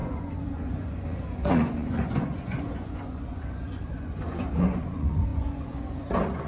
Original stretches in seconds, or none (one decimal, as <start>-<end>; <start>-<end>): none